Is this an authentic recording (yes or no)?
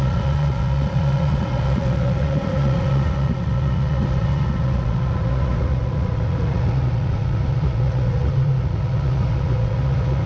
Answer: no